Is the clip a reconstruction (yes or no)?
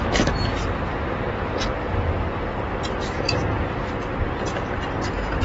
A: no